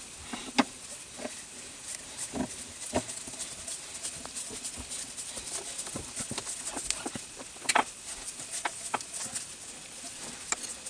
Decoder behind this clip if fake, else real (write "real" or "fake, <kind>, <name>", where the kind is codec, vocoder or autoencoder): real